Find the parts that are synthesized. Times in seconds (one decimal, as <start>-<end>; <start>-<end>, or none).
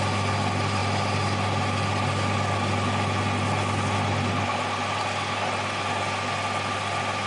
none